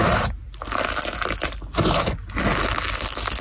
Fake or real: real